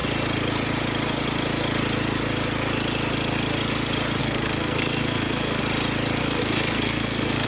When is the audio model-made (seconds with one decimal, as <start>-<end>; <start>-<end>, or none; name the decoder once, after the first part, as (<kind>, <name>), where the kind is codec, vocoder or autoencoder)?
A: 4.2-5.6 (codec, SNAC); 6.2-7.5